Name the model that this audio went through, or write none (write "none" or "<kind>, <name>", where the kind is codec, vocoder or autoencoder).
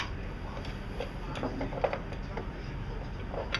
none